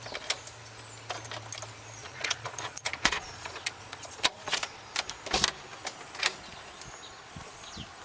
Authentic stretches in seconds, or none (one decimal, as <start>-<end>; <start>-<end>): 0.0-2.0; 4.8-8.0